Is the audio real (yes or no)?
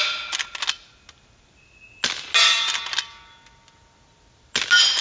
yes